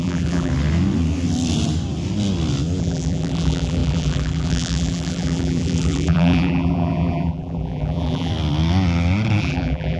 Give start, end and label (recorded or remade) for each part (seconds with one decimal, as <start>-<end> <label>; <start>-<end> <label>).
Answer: 0.0-0.5 remade; 0.5-2.8 recorded; 2.8-8.3 remade; 8.3-9.4 recorded; 9.4-10.0 remade